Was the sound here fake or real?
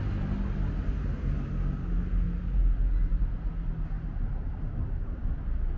real